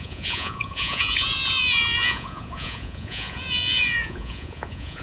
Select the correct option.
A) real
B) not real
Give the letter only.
B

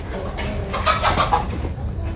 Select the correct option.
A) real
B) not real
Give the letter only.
A